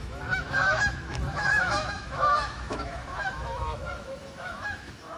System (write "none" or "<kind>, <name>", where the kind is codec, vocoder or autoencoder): autoencoder, DAC-VAE